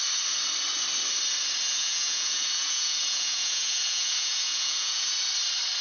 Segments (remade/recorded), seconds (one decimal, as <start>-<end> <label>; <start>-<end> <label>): 0.0-1.7 recorded; 1.7-5.2 remade; 5.2-5.8 recorded